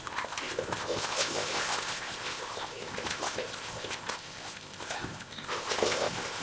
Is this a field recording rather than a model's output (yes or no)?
no